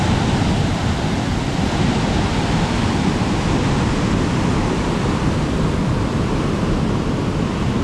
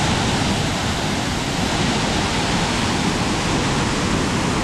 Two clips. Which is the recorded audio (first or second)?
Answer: second